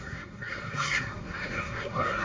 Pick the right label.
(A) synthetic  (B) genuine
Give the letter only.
A